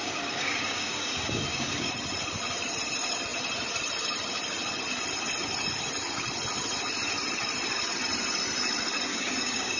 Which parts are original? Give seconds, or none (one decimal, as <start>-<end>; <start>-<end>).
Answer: 1.9-9.1